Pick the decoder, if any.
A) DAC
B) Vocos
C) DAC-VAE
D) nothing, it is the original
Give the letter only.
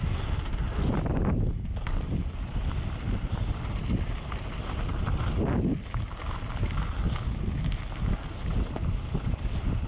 D